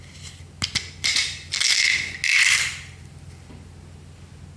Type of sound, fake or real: real